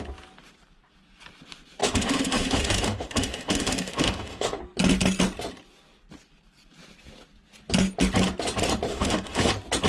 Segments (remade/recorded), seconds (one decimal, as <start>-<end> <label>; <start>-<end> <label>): 0.0-1.8 recorded; 1.8-4.6 remade; 4.6-8.9 recorded; 8.9-9.5 remade; 9.5-9.9 recorded